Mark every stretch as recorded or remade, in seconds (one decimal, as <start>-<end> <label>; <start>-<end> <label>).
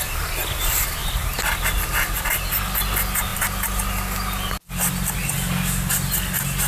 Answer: 0.0-6.7 recorded